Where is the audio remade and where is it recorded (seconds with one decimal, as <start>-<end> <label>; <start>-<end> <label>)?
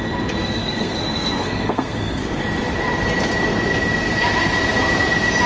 0.0-0.4 recorded; 0.4-2.4 remade; 2.4-5.5 recorded